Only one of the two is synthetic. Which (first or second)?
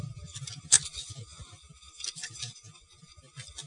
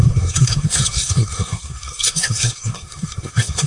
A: second